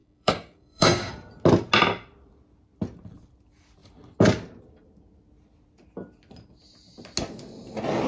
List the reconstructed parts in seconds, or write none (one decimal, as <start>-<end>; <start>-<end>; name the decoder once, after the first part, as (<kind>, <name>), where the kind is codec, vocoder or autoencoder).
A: 0.0-1.1 (codec, DAC)